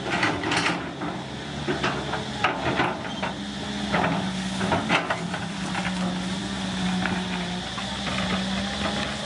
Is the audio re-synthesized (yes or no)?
no